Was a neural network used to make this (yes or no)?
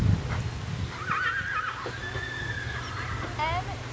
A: no